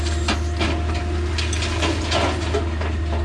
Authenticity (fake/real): real